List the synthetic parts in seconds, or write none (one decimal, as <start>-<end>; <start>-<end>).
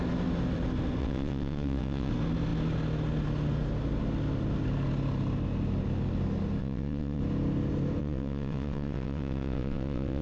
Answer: 1.0-2.1; 6.6-7.2; 8.0-10.2